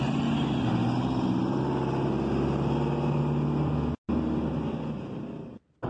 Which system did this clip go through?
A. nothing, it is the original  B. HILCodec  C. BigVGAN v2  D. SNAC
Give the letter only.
A